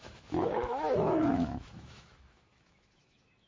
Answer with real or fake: fake